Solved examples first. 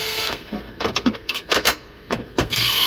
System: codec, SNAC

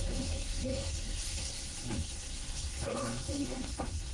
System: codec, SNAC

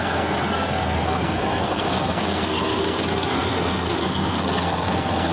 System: codec, SNAC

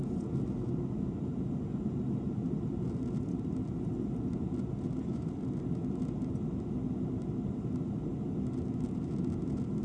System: none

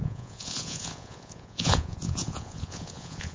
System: vocoder, Vocos